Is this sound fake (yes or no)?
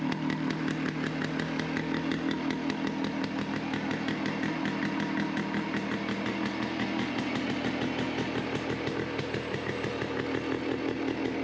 no